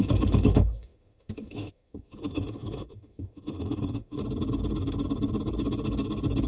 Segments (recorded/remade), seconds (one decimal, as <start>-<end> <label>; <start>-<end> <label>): 0.0-4.2 remade; 4.2-6.5 recorded